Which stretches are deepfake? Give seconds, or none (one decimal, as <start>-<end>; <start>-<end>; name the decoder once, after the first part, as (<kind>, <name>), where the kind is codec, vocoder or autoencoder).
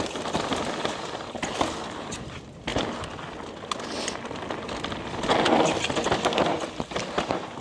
none